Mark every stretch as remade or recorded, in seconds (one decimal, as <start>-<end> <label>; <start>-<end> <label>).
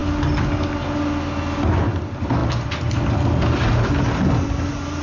0.0-5.0 recorded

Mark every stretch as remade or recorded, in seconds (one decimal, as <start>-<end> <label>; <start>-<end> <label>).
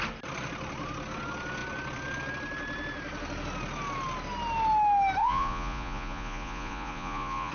0.0-5.2 recorded; 5.2-7.5 remade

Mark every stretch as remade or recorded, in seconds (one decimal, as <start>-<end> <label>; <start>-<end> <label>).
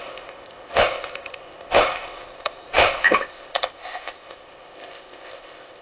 0.0-5.8 remade